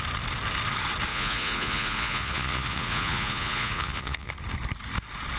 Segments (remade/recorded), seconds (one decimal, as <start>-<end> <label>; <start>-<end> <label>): 0.0-1.1 recorded; 1.1-4.3 remade; 4.3-5.4 recorded